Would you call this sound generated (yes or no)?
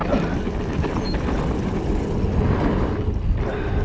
no